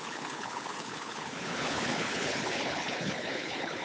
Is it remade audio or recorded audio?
remade